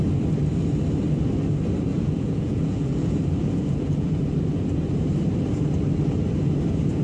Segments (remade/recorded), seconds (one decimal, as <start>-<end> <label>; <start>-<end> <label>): 0.0-1.9 recorded; 1.9-4.2 remade; 4.2-7.0 recorded